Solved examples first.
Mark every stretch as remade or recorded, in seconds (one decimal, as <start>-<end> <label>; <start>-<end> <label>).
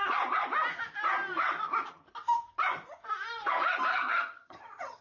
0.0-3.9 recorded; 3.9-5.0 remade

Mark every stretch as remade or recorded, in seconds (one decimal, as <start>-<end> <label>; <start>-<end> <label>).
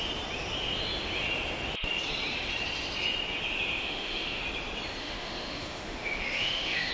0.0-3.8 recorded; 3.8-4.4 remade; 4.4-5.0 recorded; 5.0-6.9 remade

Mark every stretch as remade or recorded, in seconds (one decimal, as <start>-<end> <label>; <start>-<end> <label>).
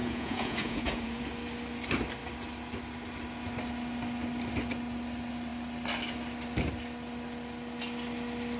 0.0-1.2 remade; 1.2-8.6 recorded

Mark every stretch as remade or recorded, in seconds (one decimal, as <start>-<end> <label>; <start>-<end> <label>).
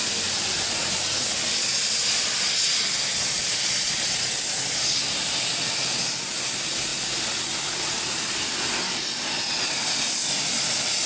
0.0-11.1 recorded